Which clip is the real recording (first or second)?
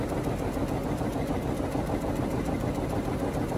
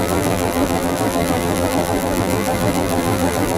first